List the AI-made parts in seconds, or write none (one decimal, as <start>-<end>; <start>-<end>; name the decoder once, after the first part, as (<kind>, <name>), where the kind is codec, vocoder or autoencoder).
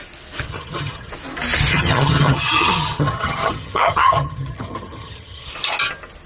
0.5-1.1 (vocoder, HiFi-GAN); 1.7-5.5